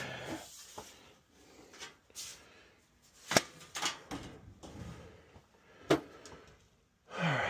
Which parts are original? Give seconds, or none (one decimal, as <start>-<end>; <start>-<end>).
0.0-7.5

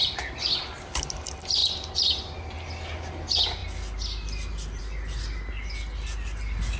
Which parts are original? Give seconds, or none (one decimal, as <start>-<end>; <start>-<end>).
0.0-6.8